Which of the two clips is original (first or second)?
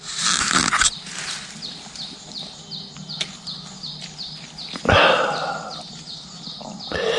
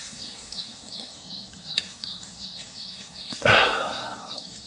first